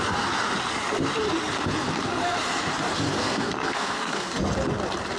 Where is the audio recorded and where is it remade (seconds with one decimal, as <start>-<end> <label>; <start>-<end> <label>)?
0.0-3.2 recorded; 3.2-4.3 remade; 4.3-5.2 recorded